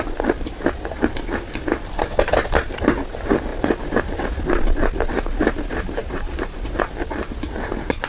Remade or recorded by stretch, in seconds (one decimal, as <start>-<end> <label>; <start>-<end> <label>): 0.0-6.0 recorded; 6.0-6.8 remade; 6.8-8.1 recorded